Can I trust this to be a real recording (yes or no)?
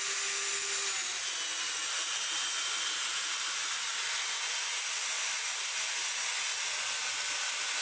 yes